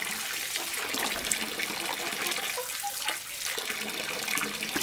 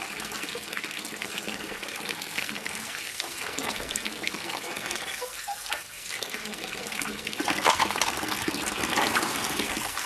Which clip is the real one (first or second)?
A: first